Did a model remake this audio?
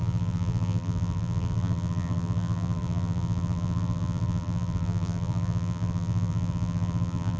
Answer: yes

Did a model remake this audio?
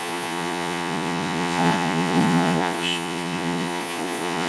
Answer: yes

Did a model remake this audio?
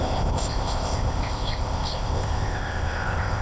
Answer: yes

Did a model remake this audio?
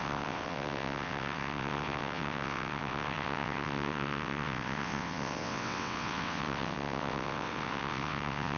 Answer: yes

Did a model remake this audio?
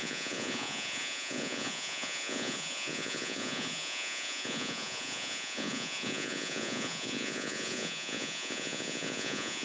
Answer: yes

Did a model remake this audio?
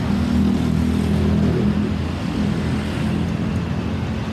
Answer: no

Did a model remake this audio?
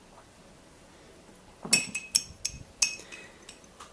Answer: no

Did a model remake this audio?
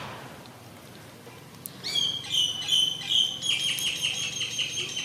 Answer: no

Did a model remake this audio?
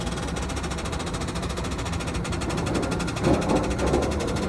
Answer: no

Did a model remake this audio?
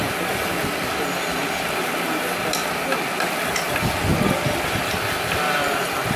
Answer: no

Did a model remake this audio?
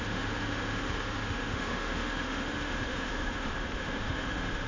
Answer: yes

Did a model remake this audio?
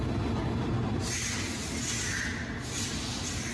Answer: no